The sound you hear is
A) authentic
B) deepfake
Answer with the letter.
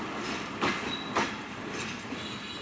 A